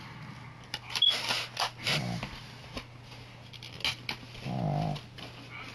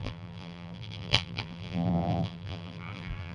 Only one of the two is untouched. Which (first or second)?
first